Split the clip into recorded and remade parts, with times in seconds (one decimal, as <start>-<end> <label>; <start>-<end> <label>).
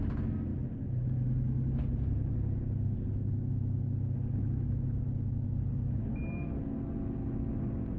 0.0-8.0 recorded